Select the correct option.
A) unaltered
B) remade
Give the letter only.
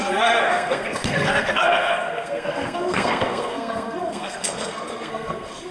B